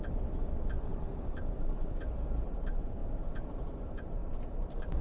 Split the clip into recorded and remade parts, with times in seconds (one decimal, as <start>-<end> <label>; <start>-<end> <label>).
0.0-0.9 recorded; 0.9-1.9 remade; 1.9-3.0 recorded; 3.0-3.7 remade; 3.7-4.2 recorded; 4.2-5.0 remade